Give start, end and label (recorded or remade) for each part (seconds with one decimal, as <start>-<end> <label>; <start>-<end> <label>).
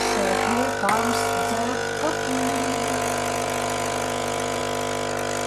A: 0.0-1.4 recorded; 1.4-2.0 remade; 2.0-2.5 recorded; 2.5-4.6 remade; 4.6-5.5 recorded